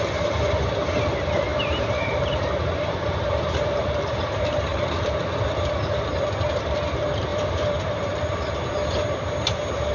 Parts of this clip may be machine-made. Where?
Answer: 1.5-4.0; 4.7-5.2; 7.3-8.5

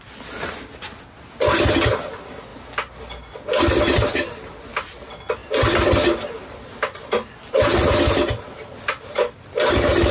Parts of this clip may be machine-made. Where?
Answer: none

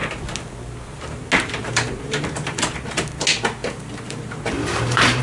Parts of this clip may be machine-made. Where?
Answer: 1.6-2.6; 3.6-5.2

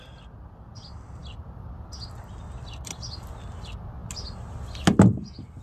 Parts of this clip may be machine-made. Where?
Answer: none

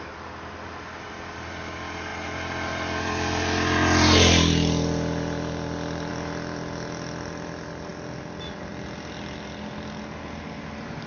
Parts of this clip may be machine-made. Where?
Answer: none